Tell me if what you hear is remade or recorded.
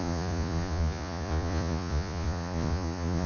remade